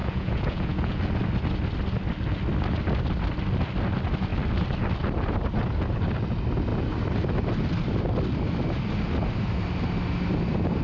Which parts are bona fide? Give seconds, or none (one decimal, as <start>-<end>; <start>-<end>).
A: 1.0-10.8